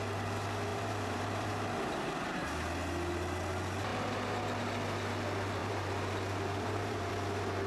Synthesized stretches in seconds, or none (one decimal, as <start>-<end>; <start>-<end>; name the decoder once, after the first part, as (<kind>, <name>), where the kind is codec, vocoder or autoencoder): 0.7-1.5 (vocoder, BigVGAN v2); 5.6-7.1